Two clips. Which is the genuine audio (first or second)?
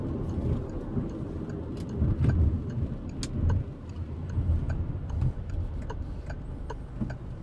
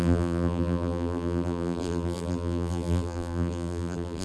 first